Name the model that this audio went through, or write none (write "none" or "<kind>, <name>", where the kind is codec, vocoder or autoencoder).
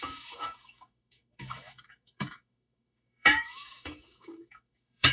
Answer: autoencoder, DAC-VAE